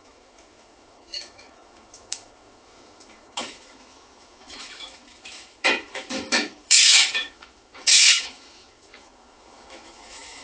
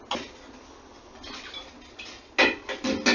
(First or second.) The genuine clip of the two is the second